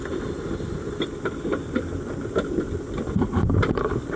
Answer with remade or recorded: recorded